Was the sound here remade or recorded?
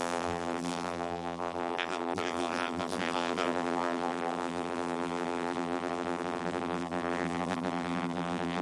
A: remade